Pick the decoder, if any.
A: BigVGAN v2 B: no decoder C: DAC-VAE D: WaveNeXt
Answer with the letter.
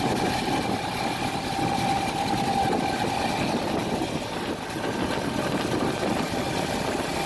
B